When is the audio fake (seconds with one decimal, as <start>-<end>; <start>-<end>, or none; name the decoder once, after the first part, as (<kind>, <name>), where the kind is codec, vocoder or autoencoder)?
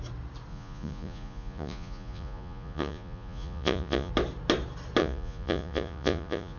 0.5-4.1 (vocoder, Vocos); 5.0-6.6